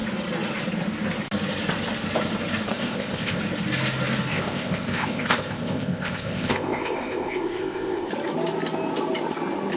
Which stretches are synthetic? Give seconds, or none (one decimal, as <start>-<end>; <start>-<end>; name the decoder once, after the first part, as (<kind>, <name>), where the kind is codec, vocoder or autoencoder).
2.7-3.4 (codec, ZipCodec); 4.3-8.1